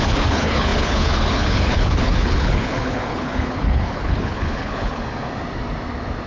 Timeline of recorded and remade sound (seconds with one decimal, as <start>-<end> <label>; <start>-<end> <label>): 0.0-5.0 remade; 5.0-6.3 recorded